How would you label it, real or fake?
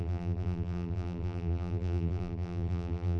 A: fake